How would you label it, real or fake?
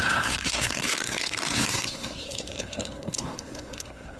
fake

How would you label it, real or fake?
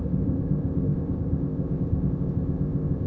fake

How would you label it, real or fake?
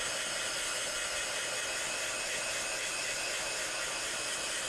real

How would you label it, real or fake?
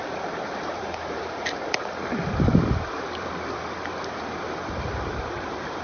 fake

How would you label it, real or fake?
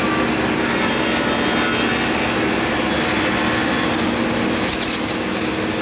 real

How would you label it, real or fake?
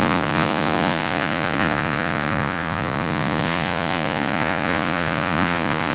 fake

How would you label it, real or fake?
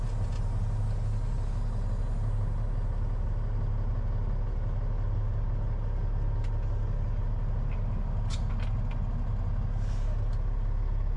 real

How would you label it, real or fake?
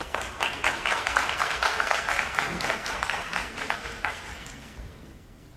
fake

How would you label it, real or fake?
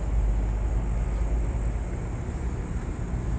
real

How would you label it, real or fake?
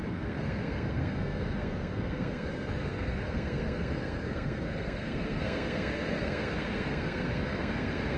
fake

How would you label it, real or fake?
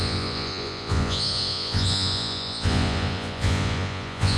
fake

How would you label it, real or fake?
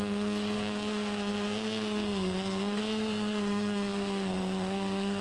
fake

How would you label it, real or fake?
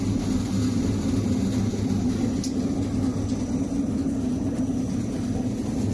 real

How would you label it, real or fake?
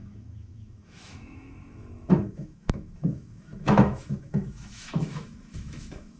fake